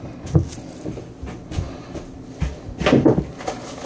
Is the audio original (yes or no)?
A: yes